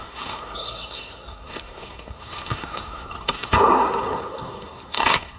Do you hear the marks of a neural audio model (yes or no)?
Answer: yes